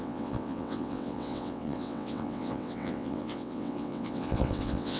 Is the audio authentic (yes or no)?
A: no